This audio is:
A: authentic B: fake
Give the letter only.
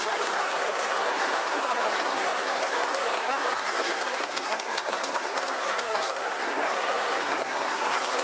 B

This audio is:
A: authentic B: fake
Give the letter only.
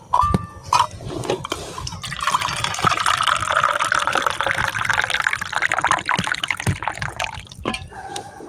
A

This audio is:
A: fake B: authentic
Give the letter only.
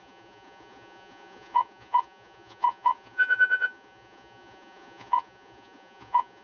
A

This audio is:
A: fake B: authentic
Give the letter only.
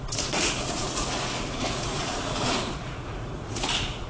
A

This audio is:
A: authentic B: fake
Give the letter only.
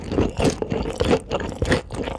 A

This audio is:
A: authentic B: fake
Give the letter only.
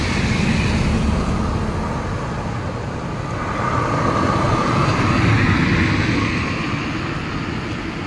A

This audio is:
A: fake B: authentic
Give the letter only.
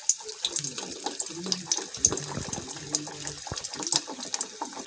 B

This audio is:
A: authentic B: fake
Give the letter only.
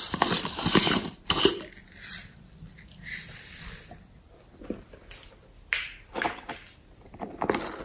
A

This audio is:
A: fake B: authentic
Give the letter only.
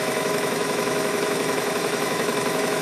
A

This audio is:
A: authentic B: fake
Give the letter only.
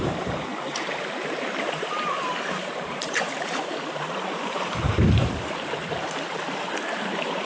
B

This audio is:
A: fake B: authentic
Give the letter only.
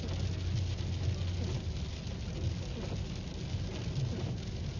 B